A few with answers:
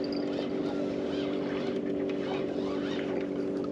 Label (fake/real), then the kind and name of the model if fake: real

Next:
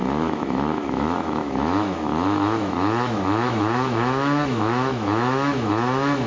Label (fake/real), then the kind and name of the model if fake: fake, autoencoder, DAC-VAE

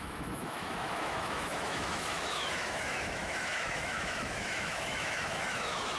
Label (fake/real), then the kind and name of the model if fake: fake, autoencoder, DAC-VAE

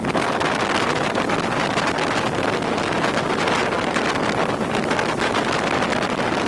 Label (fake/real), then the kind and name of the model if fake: real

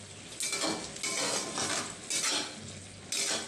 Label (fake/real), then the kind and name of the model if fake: real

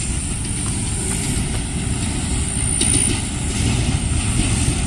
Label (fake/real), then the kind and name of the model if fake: real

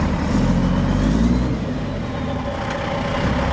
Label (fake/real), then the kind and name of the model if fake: real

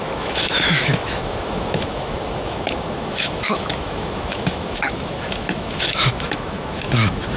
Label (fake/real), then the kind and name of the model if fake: fake, autoencoder, DAC-VAE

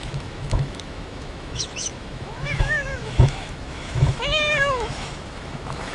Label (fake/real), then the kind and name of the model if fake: fake, autoencoder, DAC-VAE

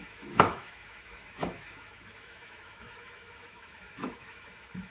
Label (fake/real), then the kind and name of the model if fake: fake, autoencoder, DAC-VAE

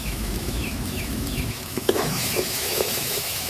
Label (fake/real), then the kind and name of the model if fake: fake, autoencoder, DAC-VAE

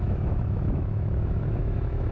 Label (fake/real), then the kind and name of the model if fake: fake, autoencoder, DAC-VAE